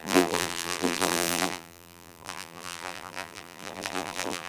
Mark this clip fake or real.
fake